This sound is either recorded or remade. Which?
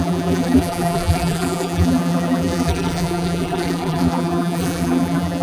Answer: remade